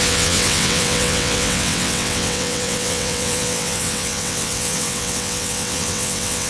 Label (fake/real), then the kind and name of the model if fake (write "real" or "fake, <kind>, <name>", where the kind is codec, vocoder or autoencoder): fake, vocoder, WaveNeXt